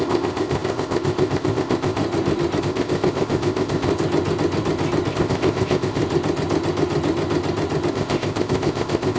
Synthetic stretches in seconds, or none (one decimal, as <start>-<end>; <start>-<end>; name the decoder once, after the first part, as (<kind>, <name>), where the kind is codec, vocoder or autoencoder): 0.0-2.0 (codec, ZipCodec); 2.6-3.9; 5.1-6.0; 7.9-9.2